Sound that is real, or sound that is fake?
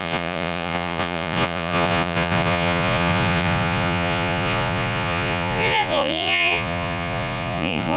fake